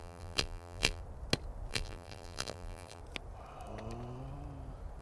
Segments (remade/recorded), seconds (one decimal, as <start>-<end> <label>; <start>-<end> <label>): 0.0-1.0 remade; 1.0-1.7 recorded; 1.7-3.0 remade; 3.0-5.0 recorded